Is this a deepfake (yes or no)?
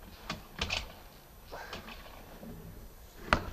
no